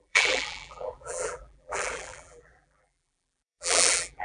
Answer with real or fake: fake